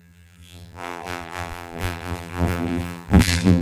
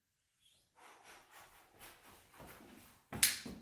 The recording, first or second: second